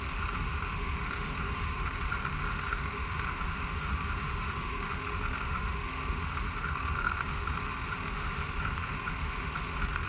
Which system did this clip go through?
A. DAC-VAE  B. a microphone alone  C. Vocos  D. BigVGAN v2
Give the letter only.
A